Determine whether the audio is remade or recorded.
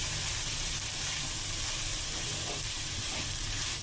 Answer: remade